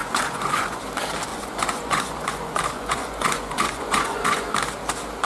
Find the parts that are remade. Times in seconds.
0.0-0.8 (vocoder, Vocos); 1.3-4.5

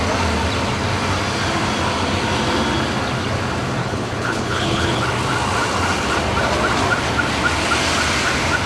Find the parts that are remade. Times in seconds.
3.8-5.0 (codec, HILCodec)

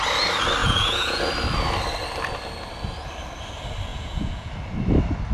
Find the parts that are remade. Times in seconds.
0.6-1.3 (vocoder, Vocos); 3.9-4.5

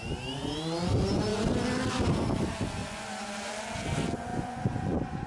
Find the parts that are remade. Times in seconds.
2.8-3.5 (vocoder, Vocos); 4.3-5.3

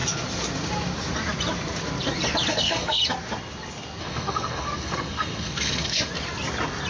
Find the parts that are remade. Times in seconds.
2.5-3.0 (codec, SNAC); 4.0-6.1

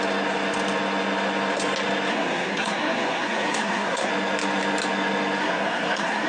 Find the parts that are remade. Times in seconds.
2.1-4.1 (codec, SNAC); 5.4-6.3

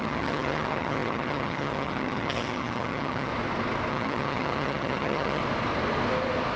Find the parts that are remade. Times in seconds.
0.0-3.3 (vocoder, HiFi-GAN); 3.9-5.4

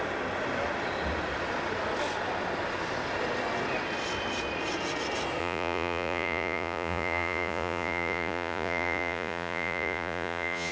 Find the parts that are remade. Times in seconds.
5.4-10.7 (vocoder, Vocos)